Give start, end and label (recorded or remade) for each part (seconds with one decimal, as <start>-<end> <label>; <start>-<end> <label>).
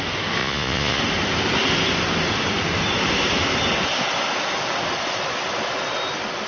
0.0-0.4 recorded; 0.4-1.0 remade; 1.0-6.5 recorded